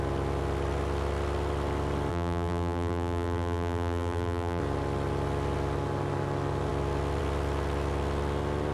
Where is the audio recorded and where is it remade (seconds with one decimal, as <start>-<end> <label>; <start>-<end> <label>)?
0.0-2.1 recorded; 2.1-4.6 remade; 4.6-8.7 recorded